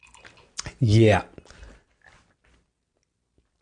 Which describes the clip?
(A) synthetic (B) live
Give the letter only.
B